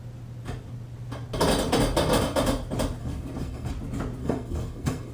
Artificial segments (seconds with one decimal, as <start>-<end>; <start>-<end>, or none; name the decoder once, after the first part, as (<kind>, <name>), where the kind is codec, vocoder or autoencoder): 3.0-3.7 (codec, SNAC); 4.2-5.1